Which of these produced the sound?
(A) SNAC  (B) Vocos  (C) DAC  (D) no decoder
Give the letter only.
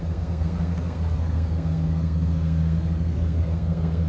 A